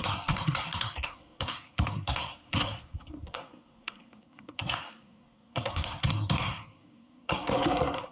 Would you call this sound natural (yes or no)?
no